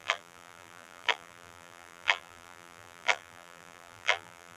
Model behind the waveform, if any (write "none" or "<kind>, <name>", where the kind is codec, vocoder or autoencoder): vocoder, BigVGAN v2